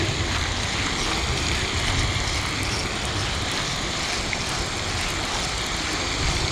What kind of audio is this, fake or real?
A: real